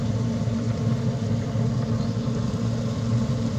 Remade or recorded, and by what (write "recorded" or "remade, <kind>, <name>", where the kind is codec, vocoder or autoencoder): recorded